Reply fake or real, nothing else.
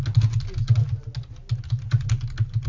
real